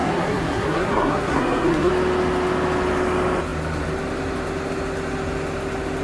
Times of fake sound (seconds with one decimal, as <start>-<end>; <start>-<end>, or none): 0.0-1.9

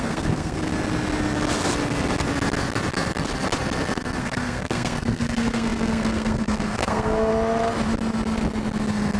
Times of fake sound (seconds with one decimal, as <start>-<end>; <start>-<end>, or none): 0.0-0.7; 4.2-7.3

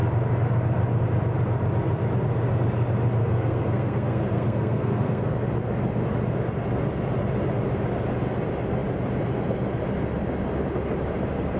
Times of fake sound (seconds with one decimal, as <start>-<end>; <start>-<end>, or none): 3.2-5.2